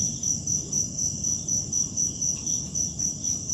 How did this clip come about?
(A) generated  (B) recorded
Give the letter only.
B